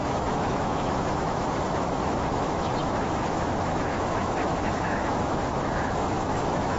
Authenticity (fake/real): fake